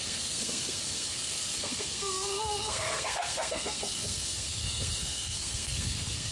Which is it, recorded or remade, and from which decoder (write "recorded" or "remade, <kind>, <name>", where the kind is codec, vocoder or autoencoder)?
remade, codec, SNAC